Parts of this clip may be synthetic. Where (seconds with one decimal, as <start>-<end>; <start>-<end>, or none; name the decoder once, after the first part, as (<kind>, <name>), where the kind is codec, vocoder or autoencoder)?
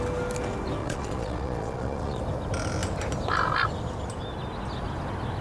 0.8-2.2 (vocoder, Vocos)